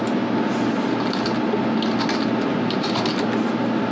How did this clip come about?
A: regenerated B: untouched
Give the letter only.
B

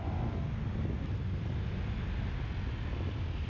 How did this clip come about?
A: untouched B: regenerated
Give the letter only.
A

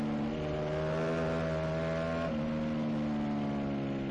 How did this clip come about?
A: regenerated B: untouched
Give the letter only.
B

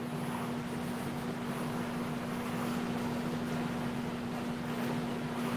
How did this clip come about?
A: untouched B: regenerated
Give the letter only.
A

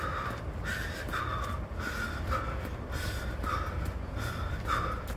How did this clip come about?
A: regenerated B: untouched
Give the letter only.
B